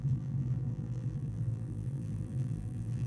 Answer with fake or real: fake